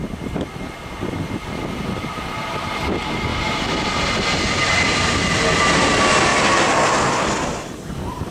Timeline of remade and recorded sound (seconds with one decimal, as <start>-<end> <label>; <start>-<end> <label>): 0.0-6.3 remade; 6.3-7.0 recorded; 7.0-8.3 remade